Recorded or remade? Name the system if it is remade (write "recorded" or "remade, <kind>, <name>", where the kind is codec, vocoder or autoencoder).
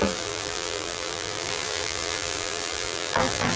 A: remade, vocoder, BigVGAN v2